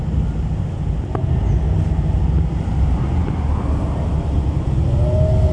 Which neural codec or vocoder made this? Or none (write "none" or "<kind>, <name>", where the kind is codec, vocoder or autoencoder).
none